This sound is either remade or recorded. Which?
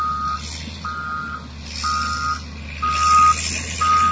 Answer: recorded